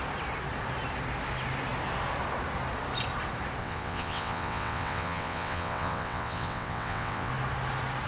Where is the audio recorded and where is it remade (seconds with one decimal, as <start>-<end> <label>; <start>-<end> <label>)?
0.0-3.6 recorded; 3.6-7.3 remade; 7.3-8.1 recorded